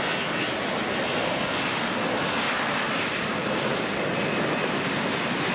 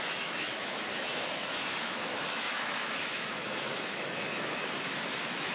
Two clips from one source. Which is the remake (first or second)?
second